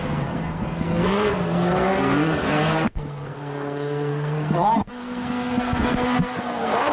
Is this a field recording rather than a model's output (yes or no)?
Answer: no